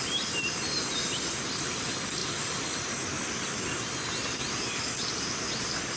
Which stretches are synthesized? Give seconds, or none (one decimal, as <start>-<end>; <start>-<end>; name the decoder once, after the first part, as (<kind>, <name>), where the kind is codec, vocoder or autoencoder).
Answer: none